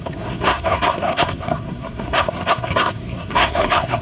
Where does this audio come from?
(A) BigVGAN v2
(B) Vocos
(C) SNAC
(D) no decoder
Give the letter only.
C